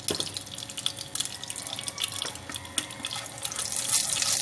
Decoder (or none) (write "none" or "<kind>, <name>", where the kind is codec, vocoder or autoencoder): none